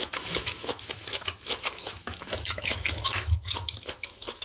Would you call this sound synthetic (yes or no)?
yes